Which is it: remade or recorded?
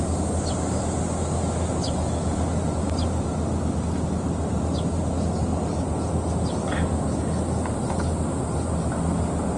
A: recorded